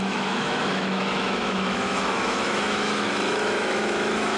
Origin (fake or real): fake